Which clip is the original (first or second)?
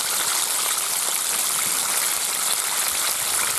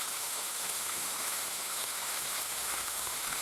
first